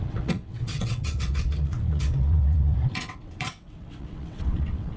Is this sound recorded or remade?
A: remade